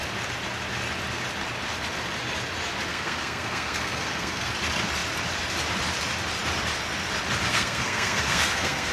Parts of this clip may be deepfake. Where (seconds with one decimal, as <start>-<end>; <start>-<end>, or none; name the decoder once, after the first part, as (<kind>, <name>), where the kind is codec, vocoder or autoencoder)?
2.9-4.5 (codec, SNAC); 7.5-8.9